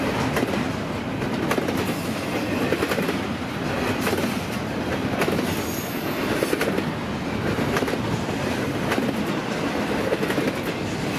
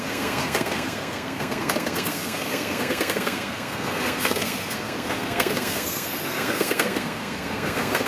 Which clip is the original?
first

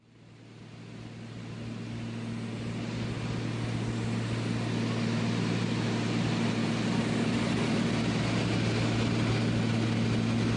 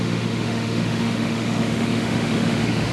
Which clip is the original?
first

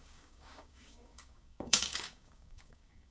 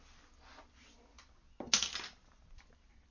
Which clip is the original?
second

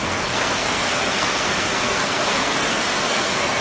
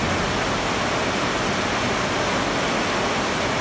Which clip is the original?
second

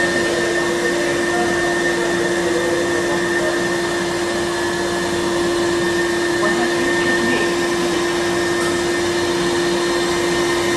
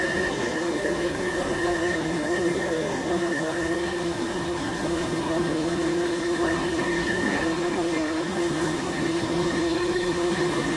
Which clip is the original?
first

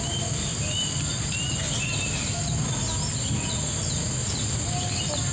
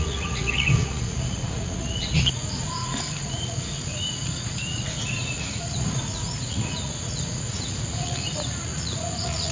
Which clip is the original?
first